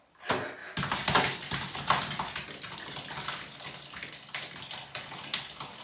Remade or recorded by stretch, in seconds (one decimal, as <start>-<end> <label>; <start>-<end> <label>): 0.0-5.8 recorded